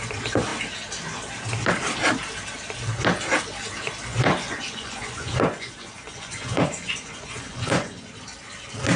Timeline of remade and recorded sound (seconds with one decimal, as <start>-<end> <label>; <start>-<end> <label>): 0.0-4.1 recorded; 4.1-8.1 remade; 8.1-9.0 recorded